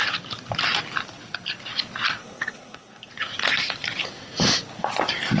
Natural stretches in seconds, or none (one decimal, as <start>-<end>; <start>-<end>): 0.0-2.2; 3.1-5.4